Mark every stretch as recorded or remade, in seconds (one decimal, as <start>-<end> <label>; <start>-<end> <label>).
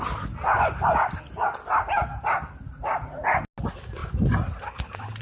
0.0-2.0 recorded; 2.0-2.9 remade; 2.9-5.2 recorded